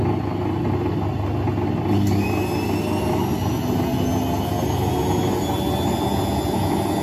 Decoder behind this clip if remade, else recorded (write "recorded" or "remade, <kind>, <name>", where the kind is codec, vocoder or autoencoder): recorded